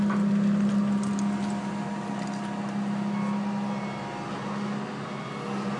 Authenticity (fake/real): real